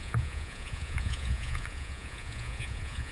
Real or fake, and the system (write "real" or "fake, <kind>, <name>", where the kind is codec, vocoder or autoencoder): fake, vocoder, Vocos